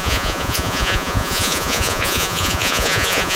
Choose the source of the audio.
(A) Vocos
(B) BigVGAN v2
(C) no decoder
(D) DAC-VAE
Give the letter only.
A